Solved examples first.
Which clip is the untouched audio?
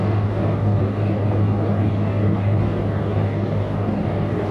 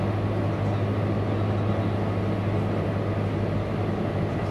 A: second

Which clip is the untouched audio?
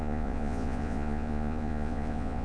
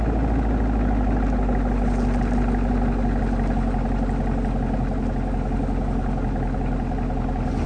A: second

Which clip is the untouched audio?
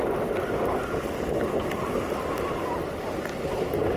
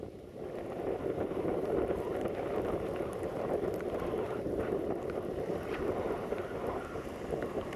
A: first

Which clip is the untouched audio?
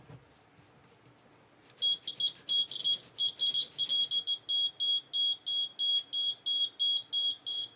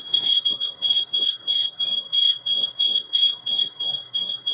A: first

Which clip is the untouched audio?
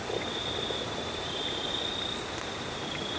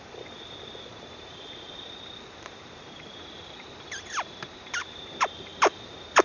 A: first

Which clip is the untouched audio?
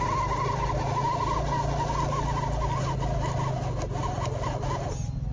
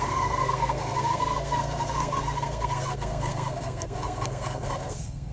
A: first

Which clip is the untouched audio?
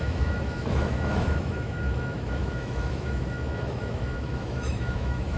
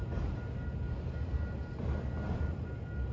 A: second